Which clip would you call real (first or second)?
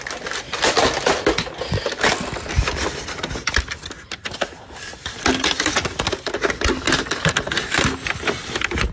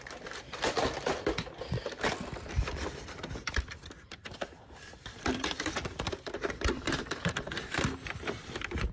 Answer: first